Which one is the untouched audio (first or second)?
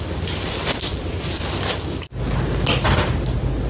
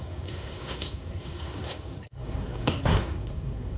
first